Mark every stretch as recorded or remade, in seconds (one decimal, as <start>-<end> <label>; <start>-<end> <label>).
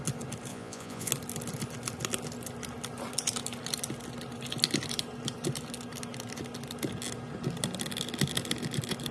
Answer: 0.0-0.5 recorded; 0.5-1.1 remade; 1.1-9.1 recorded